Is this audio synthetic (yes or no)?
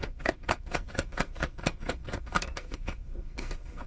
yes